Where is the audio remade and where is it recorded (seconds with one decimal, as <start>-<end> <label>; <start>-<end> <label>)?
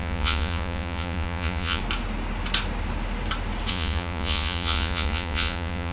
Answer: 0.0-1.8 remade; 1.8-3.7 recorded; 3.7-5.9 remade